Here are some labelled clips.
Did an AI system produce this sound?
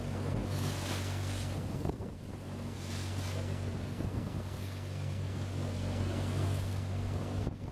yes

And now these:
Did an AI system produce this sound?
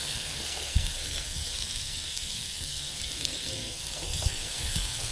yes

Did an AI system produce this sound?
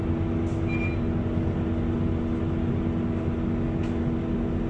no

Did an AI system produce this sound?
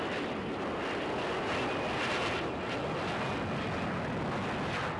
no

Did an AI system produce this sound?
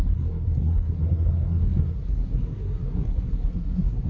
yes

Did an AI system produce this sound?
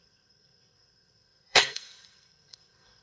yes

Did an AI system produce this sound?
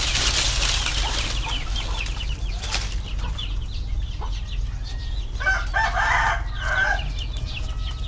no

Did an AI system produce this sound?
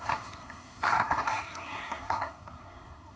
yes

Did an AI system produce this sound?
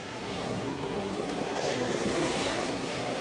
yes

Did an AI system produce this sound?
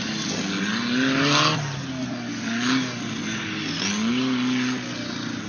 no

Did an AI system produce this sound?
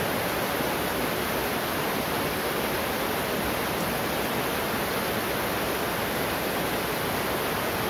no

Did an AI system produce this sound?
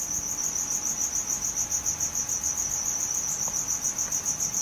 no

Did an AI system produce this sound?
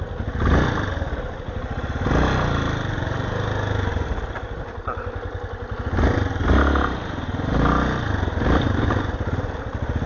no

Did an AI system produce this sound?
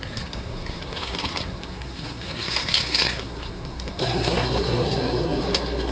yes